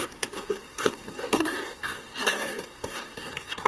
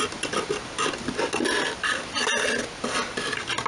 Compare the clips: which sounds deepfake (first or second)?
first